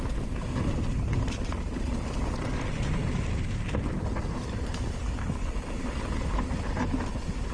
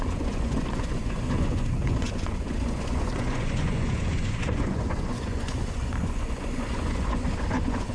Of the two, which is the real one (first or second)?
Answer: first